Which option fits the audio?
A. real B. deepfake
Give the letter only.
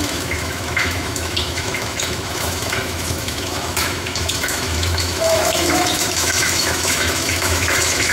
B